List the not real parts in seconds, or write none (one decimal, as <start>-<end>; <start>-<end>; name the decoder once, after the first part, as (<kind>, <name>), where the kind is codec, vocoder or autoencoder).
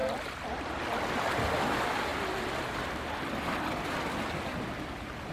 none